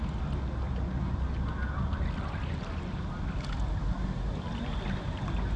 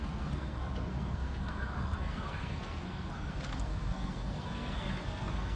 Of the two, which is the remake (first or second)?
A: second